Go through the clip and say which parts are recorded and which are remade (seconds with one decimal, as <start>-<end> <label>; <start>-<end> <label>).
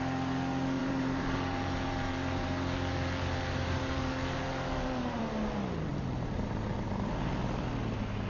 0.0-0.8 recorded; 0.8-5.2 remade; 5.2-5.9 recorded; 5.9-7.3 remade; 7.3-8.3 recorded